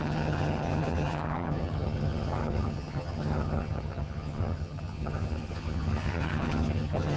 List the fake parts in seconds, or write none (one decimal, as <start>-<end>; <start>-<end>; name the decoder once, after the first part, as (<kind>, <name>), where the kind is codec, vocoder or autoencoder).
0.0-7.2 (vocoder, HiFi-GAN)